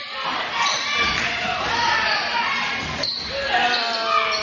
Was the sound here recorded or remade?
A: recorded